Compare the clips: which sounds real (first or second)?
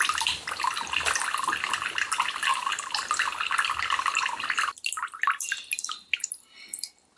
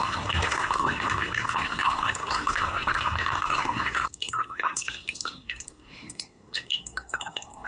first